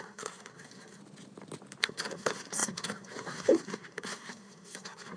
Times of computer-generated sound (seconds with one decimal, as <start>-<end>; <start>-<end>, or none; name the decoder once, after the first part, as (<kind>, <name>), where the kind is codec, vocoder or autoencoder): 0.0-1.0 (codec, SNAC); 1.8-5.2